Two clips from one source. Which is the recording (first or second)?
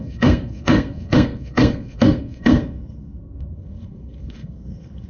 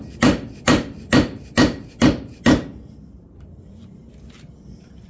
second